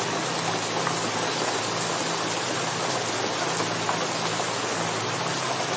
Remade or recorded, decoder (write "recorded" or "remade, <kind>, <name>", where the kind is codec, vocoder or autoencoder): recorded